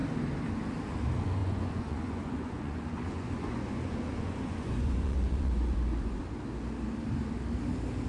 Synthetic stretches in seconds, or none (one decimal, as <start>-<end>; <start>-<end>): 1.4-6.2